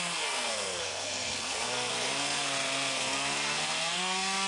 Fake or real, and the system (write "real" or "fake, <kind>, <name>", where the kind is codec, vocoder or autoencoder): fake, codec, SNAC